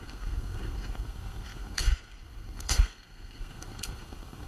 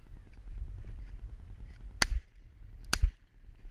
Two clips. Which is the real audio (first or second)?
second